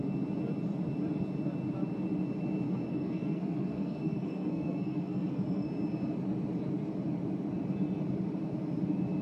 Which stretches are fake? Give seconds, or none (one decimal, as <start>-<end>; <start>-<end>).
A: 2.9-5.7